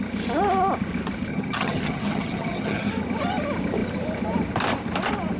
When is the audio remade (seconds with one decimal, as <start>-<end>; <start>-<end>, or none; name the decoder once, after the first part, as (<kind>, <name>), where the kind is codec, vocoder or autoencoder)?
1.3-2.9 (vocoder, HiFi-GAN)